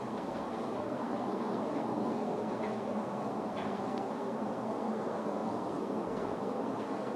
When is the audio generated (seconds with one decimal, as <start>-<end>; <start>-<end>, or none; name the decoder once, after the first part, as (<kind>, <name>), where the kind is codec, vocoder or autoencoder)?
0.0-7.2 (codec, SNAC)